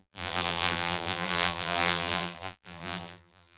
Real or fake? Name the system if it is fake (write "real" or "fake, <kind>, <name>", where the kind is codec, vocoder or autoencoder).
fake, vocoder, BigVGAN v2